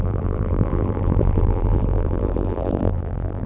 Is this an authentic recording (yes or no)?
no